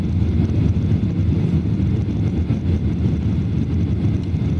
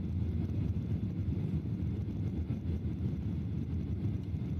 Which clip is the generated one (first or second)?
second